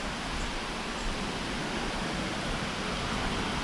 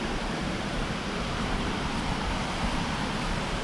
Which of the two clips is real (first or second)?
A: first